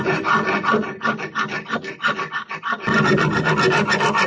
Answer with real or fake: real